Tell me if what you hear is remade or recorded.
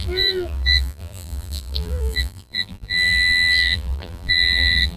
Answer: remade